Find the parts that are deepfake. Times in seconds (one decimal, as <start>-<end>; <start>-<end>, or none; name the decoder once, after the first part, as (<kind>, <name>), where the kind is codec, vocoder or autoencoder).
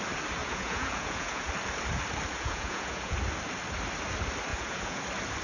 0.4-1.5 (vocoder, Vocos); 2.3-3.2; 4.5-5.0